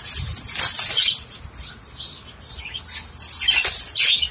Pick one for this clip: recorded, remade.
recorded